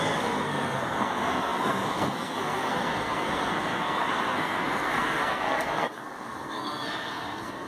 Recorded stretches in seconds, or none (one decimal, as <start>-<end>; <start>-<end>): none